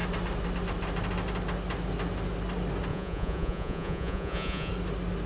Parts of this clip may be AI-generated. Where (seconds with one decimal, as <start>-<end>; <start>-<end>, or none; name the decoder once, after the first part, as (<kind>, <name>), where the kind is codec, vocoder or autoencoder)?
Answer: 2.9-4.7 (vocoder, Vocos)